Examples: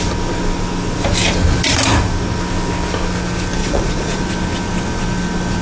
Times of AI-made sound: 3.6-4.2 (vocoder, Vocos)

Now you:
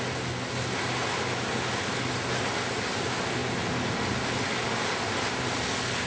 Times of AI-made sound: none